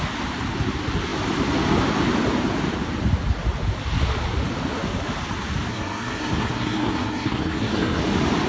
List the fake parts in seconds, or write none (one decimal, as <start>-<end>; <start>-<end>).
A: 5.7-8.0

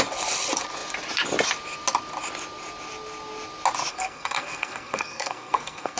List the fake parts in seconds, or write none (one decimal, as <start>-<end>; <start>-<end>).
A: 3.9-6.0

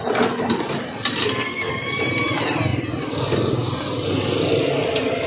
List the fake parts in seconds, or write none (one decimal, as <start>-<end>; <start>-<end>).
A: 1.2-1.7